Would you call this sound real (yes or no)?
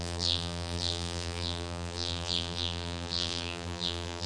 no